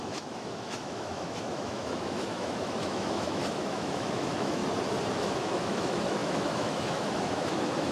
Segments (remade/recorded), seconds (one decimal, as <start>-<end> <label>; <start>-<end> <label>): 0.0-4.6 remade; 4.6-5.1 recorded; 5.1-7.9 remade

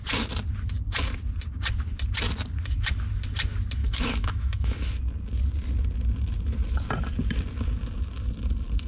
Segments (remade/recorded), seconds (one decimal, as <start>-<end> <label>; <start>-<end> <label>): 0.0-3.8 recorded; 3.8-4.9 remade; 4.9-8.9 recorded

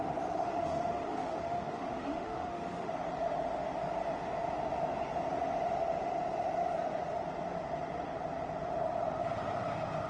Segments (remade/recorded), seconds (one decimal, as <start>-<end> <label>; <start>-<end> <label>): 0.0-0.4 recorded; 0.4-2.9 remade; 2.9-10.1 recorded

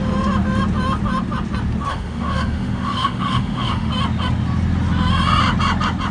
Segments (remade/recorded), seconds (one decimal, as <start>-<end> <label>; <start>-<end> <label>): 0.0-1.9 recorded; 1.9-3.9 remade; 3.9-6.1 recorded

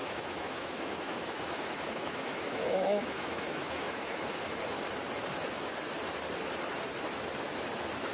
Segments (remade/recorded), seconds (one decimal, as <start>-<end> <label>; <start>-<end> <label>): 0.0-4.6 remade; 4.6-8.1 recorded

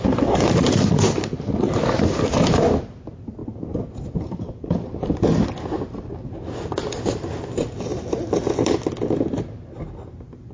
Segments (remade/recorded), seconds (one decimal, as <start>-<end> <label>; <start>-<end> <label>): 0.0-10.5 recorded

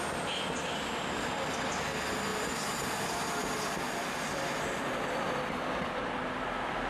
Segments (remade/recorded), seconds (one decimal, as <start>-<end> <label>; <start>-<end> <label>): 0.0-6.9 recorded

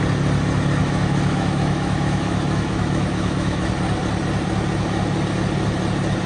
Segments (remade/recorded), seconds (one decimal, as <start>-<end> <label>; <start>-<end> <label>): 0.0-0.8 recorded; 0.8-3.7 remade; 3.7-6.3 recorded